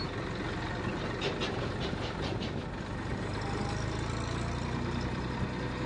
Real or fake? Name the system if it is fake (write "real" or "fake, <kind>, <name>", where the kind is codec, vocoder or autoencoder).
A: real